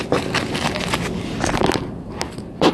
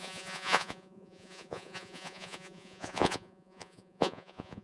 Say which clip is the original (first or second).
first